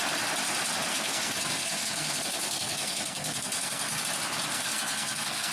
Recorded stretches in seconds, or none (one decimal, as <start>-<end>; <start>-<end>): 0.0-0.9; 4.0-4.5